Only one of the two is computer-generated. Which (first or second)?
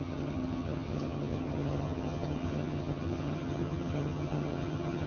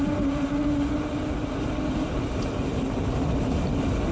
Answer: first